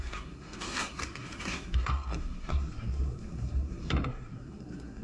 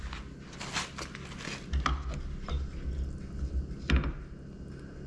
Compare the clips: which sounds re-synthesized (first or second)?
first